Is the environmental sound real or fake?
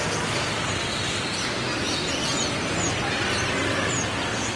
real